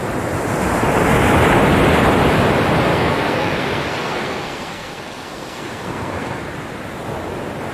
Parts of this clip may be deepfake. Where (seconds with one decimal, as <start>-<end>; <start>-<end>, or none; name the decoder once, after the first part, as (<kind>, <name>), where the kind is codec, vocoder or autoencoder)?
2.9-6.4 (codec, SNAC)